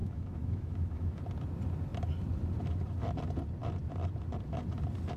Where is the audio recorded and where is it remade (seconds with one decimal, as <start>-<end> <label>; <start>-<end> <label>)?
0.0-1.2 remade; 1.2-5.2 recorded